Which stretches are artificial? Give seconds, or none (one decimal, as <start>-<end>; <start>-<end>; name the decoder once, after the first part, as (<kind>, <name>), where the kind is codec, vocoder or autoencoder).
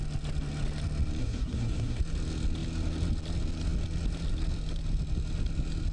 1.2-2.0 (codec, SNAC)